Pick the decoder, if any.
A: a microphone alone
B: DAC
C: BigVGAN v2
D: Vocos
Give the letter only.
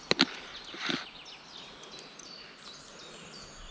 A